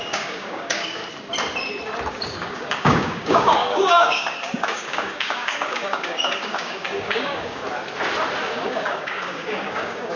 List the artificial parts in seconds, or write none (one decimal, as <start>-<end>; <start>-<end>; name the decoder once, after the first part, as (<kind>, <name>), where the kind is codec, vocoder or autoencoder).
0.0-1.0 (codec, DAC); 2.1-7.6; 8.5-10.2